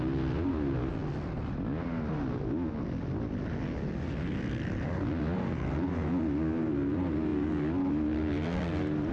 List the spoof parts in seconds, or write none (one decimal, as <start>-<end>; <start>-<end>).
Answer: none